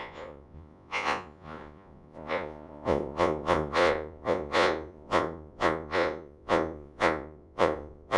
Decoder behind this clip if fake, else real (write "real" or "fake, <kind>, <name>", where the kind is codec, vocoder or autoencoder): fake, vocoder, Vocos